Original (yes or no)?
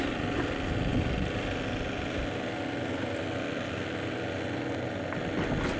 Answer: yes